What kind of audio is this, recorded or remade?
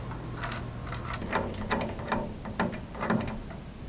recorded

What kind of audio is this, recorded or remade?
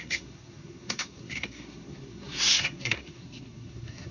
remade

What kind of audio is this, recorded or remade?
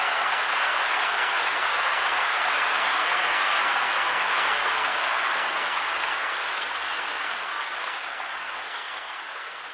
remade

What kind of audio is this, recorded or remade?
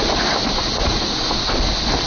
recorded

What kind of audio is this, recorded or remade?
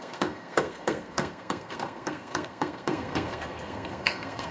remade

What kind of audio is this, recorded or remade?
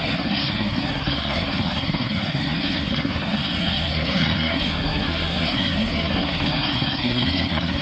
remade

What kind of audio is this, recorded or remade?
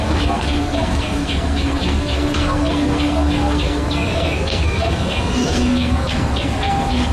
remade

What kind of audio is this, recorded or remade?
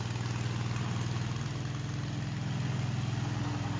recorded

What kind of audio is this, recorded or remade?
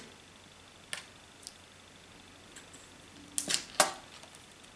recorded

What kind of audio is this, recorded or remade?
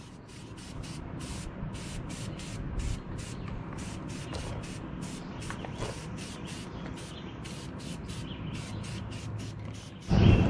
recorded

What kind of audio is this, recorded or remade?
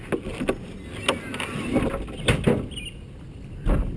recorded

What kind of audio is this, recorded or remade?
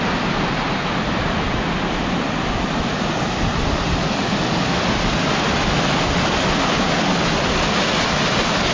recorded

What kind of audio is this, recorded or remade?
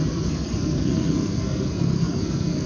remade